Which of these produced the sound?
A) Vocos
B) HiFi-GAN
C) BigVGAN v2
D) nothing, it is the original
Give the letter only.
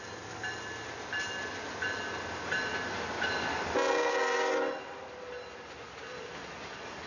D